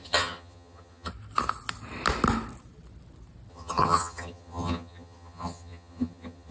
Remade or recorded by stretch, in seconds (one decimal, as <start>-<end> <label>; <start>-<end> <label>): 0.0-1.1 remade; 1.1-3.5 recorded; 3.5-6.5 remade